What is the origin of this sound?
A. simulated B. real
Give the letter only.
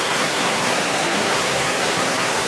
A